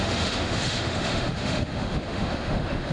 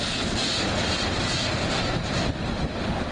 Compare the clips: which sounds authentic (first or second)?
second